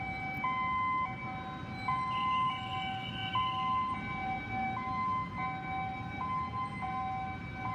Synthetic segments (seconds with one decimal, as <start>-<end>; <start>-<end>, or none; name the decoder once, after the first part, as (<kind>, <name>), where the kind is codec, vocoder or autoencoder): none